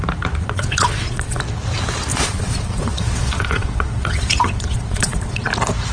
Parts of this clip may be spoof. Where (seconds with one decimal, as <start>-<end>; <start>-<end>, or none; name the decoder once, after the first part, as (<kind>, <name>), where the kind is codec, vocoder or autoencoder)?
0.4-1.4 (vocoder, Vocos); 2.1-5.5